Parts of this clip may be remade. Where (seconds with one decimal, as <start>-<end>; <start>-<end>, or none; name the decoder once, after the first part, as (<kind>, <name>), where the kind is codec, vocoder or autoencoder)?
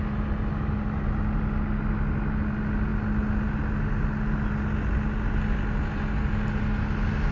none